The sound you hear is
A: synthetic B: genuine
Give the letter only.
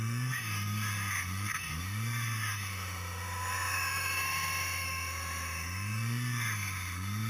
A